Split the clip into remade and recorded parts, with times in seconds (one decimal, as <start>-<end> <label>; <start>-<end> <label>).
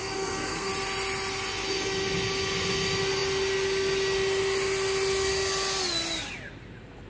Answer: 0.0-0.7 remade; 0.7-7.1 recorded